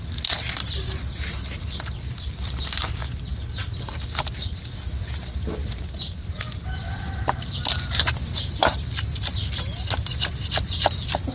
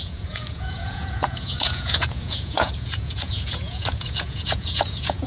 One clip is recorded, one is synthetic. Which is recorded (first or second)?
first